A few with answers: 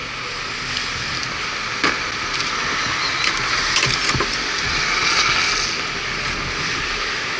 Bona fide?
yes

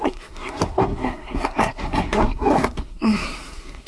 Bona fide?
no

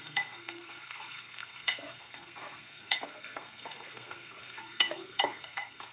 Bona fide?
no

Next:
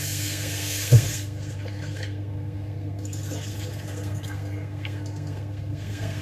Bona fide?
no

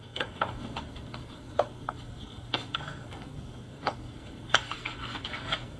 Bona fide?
no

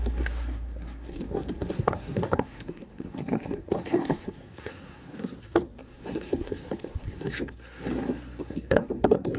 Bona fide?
no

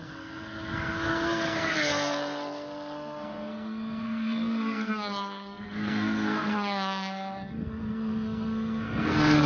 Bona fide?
no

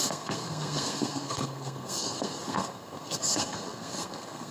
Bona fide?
no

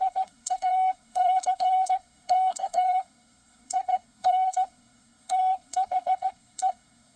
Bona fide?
no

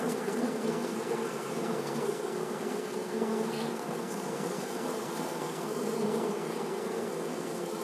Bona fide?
no